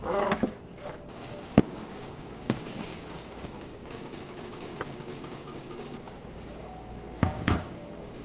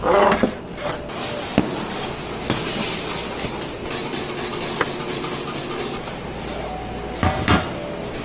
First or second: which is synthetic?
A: first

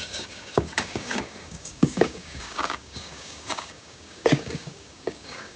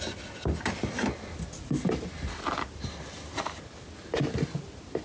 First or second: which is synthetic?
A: first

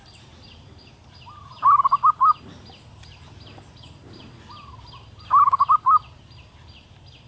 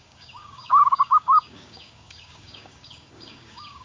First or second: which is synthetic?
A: second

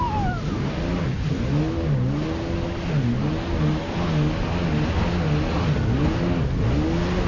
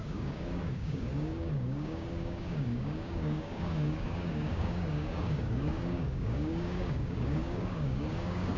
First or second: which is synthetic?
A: second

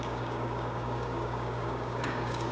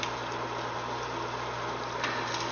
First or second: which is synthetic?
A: first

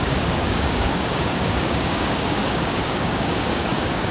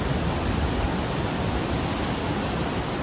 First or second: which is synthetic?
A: first